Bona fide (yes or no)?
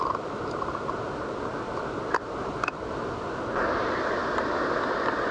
yes